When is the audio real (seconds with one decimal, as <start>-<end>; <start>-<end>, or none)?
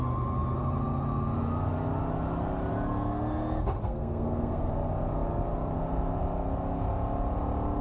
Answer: 0.0-3.8; 4.7-7.8